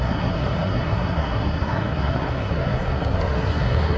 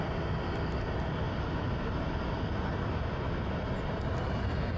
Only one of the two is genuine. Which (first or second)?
second